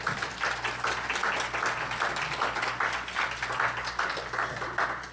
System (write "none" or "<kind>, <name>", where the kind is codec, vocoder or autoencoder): none